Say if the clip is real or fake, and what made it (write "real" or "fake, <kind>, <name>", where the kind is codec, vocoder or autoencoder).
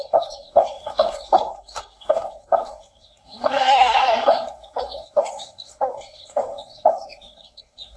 fake, codec, SNAC